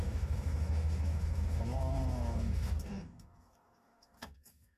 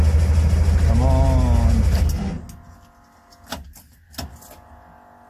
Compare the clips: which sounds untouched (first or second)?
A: second